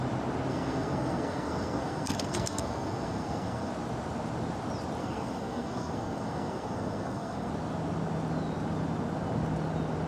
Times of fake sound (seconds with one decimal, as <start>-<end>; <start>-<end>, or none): 0.5-3.7; 5.0-7.5